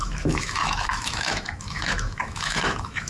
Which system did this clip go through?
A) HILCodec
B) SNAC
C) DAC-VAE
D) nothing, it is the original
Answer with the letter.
C